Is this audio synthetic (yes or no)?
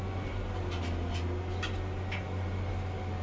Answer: no